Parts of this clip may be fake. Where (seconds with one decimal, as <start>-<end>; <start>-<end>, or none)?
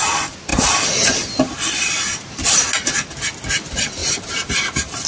4.0-5.1